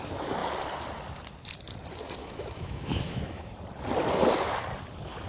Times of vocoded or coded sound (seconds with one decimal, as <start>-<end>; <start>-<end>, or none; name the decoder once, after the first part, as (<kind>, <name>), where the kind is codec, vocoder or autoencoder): 2.2-3.5 (autoencoder, DAC-VAE)

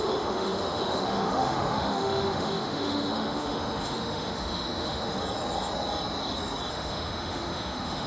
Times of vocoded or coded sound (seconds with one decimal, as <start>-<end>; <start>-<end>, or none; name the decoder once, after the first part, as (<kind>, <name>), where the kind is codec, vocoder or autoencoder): 0.0-5.2 (autoencoder, DAC-VAE); 6.7-8.1

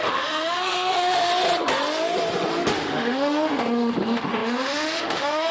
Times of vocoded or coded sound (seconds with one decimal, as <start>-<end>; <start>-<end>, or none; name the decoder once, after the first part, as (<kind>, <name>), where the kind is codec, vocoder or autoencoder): 0.0-1.3 (autoencoder, DAC-VAE); 2.7-5.5